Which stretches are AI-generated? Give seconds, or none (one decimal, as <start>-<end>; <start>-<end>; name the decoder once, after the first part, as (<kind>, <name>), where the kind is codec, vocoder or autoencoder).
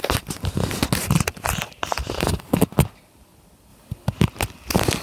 none